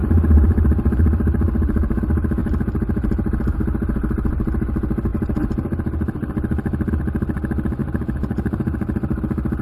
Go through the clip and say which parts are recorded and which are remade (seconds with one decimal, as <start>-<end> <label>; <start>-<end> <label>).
0.0-2.0 remade; 2.0-2.4 recorded; 2.4-3.6 remade; 3.6-7.8 recorded; 7.8-9.2 remade; 9.2-9.6 recorded